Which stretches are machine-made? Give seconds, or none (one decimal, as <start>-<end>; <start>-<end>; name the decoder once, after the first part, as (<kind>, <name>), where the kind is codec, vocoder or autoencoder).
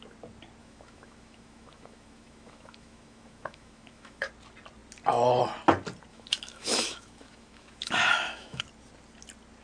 0.6-4.3 (autoencoder, DAC-VAE); 6.1-8.6